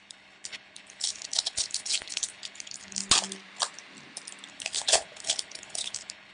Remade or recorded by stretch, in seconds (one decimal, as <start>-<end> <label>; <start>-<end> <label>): 0.0-3.0 remade; 3.0-4.5 recorded; 4.5-6.3 remade